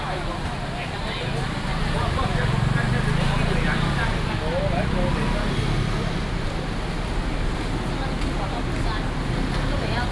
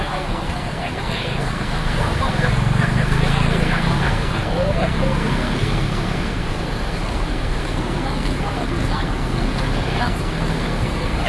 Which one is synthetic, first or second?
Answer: second